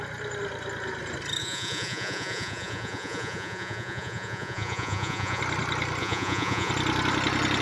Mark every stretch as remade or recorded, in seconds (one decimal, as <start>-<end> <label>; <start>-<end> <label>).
0.0-1.4 recorded; 1.4-5.4 remade; 5.4-6.0 recorded; 6.0-6.7 remade; 6.7-7.6 recorded